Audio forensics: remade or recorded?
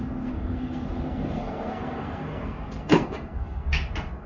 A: remade